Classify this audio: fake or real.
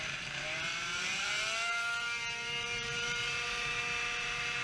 fake